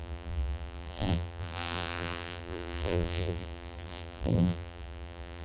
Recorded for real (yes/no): no